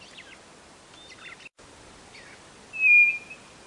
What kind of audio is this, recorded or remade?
recorded